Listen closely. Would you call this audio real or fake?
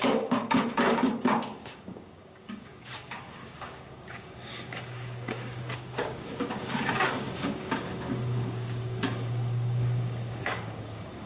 fake